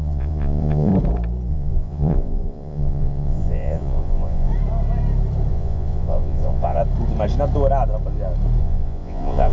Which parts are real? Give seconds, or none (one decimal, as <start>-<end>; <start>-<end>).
0.9-1.5; 4.5-5.5; 6.8-8.6